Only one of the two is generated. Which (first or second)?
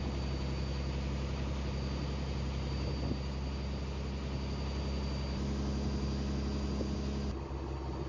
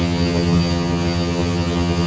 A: second